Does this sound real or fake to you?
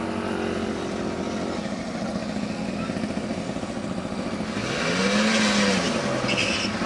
real